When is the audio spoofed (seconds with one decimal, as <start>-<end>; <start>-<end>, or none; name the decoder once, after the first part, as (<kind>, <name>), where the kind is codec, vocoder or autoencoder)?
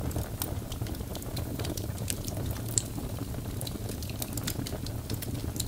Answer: 1.1-3.2 (vocoder, BigVGAN v2)